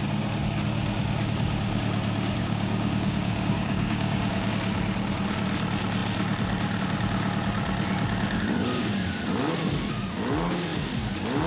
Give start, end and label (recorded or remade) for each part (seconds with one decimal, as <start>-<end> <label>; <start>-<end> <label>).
0.0-2.4 recorded; 2.4-4.5 remade; 4.5-11.5 recorded